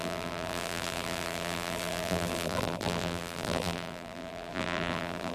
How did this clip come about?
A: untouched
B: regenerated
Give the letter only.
B